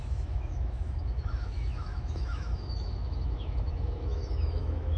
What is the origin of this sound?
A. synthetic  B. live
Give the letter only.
A